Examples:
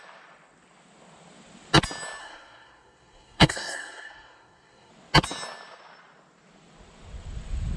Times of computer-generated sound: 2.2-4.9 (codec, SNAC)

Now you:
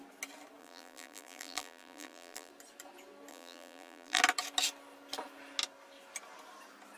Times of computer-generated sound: 0.6-2.5 (vocoder, BigVGAN v2); 3.3-4.2

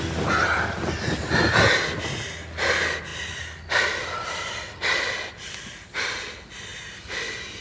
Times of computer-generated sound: none